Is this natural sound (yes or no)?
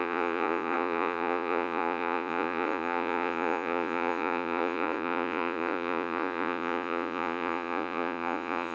no